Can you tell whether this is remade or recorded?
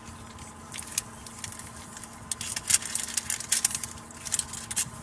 recorded